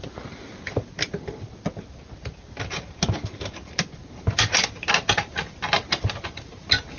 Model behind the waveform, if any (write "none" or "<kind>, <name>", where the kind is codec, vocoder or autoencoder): none